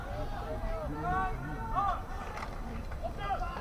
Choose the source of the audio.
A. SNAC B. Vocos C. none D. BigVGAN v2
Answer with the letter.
C